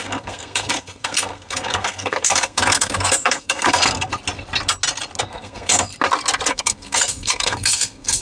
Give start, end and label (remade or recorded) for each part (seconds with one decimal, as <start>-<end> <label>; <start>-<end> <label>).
0.0-4.1 remade; 4.1-5.2 recorded; 5.2-5.9 remade; 5.9-6.5 recorded; 6.5-8.2 remade